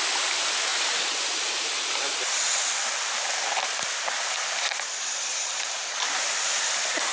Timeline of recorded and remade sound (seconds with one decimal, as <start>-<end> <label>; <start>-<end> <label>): 0.0-0.7 recorded; 0.7-2.6 remade; 2.6-5.3 recorded; 5.3-6.6 remade; 6.6-7.1 recorded